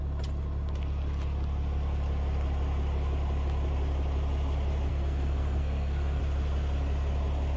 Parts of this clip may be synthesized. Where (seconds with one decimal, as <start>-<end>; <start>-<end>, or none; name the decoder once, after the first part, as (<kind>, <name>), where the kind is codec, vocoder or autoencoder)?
4.9-6.2 (codec, SNAC)